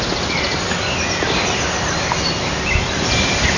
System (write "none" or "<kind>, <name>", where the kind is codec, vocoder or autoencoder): none